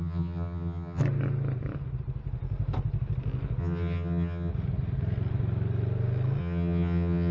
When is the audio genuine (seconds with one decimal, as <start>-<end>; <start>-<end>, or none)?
1.0-3.6; 4.5-6.4